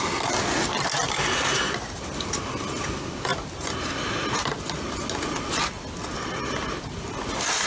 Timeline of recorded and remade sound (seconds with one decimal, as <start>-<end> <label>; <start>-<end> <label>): 0.0-7.7 recorded